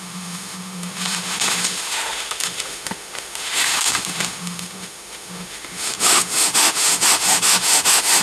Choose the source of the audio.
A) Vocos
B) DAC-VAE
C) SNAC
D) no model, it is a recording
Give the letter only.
B